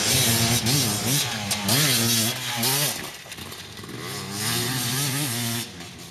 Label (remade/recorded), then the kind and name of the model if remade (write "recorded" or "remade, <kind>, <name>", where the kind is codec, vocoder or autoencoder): recorded